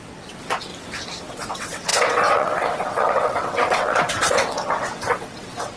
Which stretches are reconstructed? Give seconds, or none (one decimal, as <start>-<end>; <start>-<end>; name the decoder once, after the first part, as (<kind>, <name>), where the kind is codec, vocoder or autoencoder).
0.0-0.7 (vocoder, WaveNeXt); 1.3-5.8